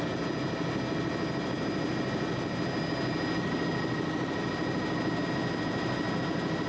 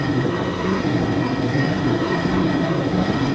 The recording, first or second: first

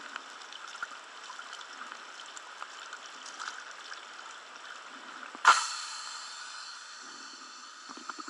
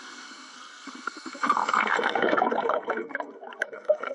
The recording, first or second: first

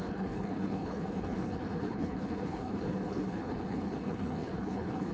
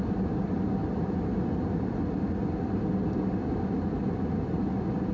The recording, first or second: second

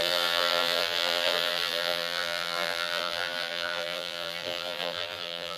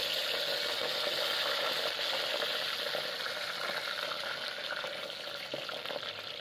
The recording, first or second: second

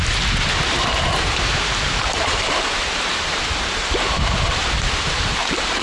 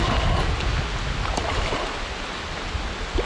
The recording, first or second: second